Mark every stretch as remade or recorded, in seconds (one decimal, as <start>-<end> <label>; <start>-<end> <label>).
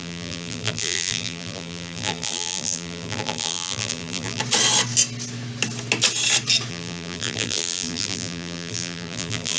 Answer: 0.0-4.4 remade; 4.4-6.7 recorded; 6.7-9.6 remade